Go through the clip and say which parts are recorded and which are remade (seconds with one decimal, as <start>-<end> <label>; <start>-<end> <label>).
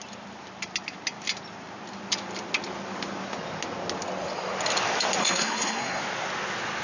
0.0-5.2 recorded; 5.2-6.0 remade; 6.0-6.8 recorded